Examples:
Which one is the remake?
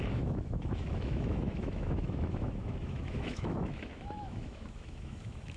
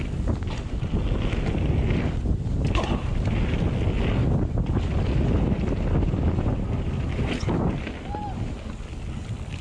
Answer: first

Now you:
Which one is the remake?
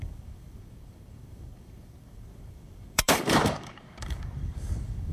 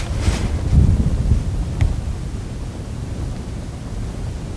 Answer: first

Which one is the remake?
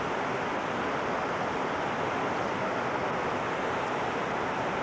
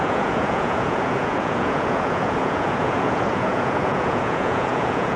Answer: second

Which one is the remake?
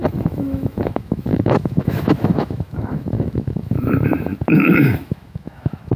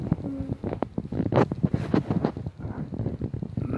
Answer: first